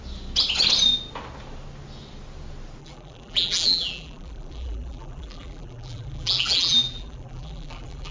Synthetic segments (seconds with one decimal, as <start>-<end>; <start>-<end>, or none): 2.8-8.1